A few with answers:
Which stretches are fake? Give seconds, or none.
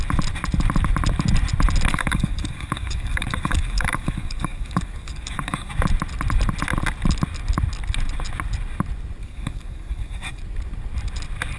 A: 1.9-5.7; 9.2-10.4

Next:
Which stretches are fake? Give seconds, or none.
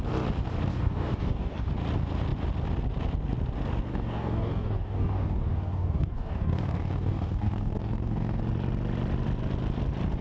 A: 0.7-1.7; 3.9-8.4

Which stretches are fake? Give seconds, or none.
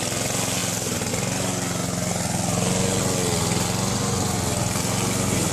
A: none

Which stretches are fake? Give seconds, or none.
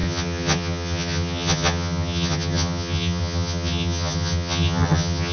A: 0.0-5.3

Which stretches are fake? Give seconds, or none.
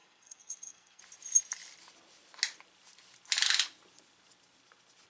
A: 0.0-1.0